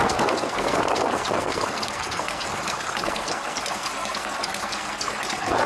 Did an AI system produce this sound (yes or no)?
yes